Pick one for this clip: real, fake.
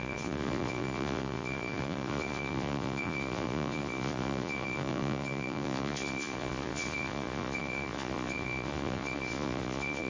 fake